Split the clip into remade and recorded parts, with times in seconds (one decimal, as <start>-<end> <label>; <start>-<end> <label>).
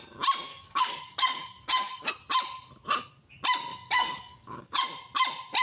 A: 0.0-0.5 recorded; 0.5-2.1 remade; 2.1-3.7 recorded; 3.7-4.8 remade; 4.8-5.6 recorded